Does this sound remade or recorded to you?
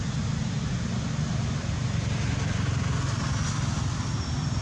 recorded